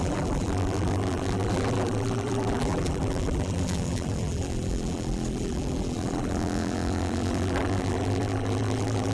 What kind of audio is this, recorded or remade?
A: remade